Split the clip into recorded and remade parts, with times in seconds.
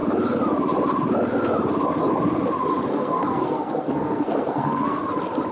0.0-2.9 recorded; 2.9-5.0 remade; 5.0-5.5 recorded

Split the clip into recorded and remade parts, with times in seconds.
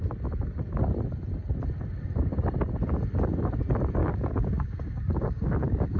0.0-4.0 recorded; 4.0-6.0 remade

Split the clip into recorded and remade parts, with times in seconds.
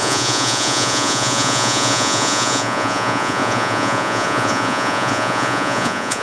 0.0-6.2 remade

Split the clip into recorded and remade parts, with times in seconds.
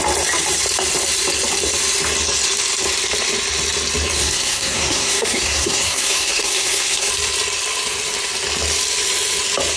0.0-4.2 recorded; 4.2-7.1 remade; 7.1-9.8 recorded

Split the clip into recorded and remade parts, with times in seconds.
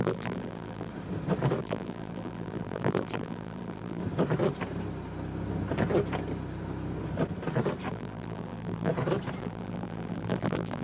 0.0-0.9 remade; 0.9-1.6 recorded; 1.6-4.0 remade; 4.0-7.9 recorded; 7.9-8.9 remade; 8.9-9.4 recorded; 9.4-10.8 remade